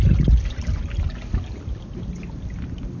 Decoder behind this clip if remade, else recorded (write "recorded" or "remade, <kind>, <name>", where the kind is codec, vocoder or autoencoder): recorded